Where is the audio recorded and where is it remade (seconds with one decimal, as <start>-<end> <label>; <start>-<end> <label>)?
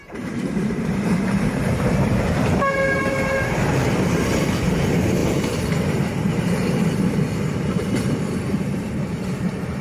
0.0-9.8 remade